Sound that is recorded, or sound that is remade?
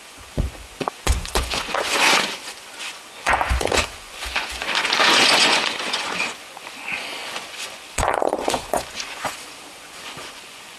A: remade